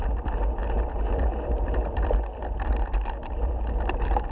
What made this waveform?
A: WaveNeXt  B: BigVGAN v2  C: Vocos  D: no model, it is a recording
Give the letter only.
D